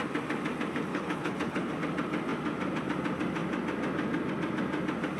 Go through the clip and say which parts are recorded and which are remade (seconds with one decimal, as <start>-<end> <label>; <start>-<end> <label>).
0.0-0.9 recorded; 0.9-1.7 remade; 1.7-5.2 recorded